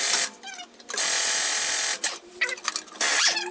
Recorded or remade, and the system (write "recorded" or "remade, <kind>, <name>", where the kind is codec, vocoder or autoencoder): recorded